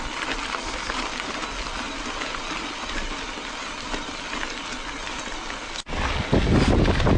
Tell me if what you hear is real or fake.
real